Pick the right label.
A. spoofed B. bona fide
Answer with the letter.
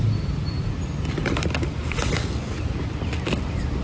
B